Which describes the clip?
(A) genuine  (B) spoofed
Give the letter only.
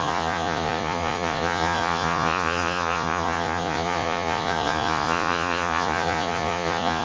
B